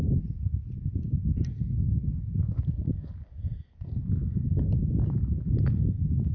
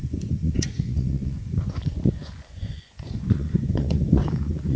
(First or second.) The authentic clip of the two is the first